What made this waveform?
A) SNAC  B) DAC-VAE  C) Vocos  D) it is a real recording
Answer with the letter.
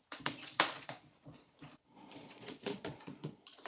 C